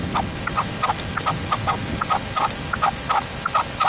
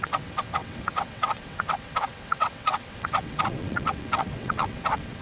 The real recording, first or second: first